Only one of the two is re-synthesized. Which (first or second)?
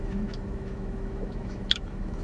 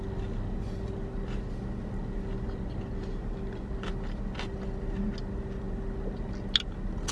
first